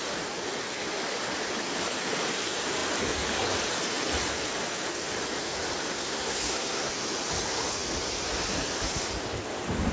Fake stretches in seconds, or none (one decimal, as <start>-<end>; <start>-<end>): 5.9-6.9